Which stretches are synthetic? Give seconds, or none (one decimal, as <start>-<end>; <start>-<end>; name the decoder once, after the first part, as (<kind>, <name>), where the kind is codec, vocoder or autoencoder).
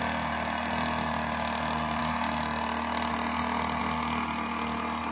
none